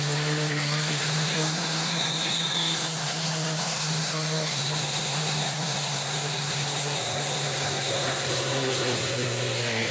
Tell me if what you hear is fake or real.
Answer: fake